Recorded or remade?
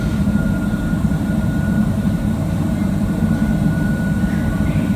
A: remade